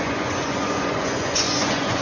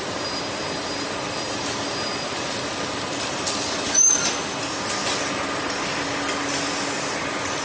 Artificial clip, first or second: first